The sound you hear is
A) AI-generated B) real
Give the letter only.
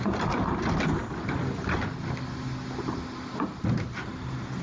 B